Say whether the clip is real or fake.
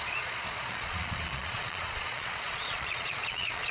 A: fake